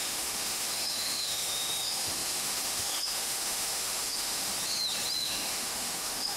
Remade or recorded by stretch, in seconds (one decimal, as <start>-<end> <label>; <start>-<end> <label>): 0.0-4.5 remade; 4.5-5.2 recorded; 5.2-6.4 remade